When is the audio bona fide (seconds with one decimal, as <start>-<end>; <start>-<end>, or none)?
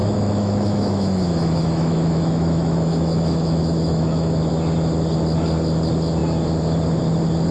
4.5-7.5